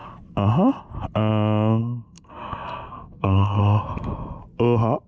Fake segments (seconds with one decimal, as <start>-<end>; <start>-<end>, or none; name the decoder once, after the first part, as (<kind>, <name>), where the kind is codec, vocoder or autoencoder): 1.8-3.6 (codec, SNAC)